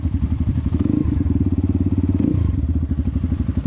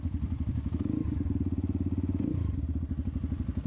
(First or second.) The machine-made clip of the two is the first